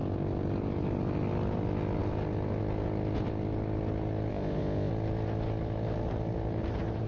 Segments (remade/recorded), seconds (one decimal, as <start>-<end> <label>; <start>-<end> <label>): 0.0-4.3 recorded; 4.3-4.9 remade; 4.9-7.1 recorded